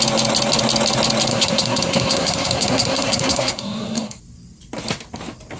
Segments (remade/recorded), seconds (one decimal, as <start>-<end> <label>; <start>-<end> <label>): 0.0-1.3 recorded; 1.3-4.2 remade; 4.2-5.6 recorded